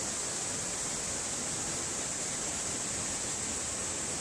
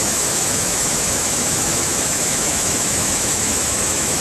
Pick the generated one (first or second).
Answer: second